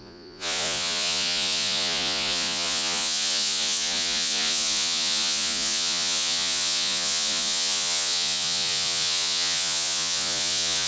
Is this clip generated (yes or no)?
yes